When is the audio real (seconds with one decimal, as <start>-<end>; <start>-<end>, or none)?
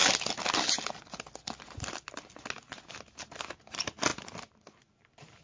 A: 0.0-5.4